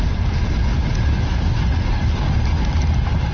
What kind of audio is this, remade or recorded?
recorded